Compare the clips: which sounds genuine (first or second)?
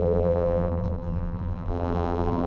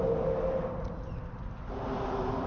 second